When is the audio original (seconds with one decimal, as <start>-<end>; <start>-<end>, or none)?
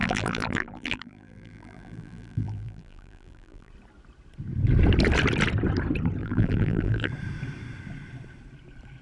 3.7-6.2; 7.1-9.0